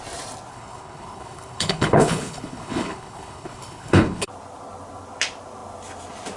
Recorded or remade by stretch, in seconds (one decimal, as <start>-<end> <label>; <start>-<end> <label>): 0.0-0.5 recorded; 0.5-4.3 remade; 4.3-6.4 recorded